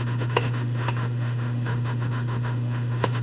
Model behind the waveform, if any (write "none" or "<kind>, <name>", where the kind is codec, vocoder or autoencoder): autoencoder, DAC-VAE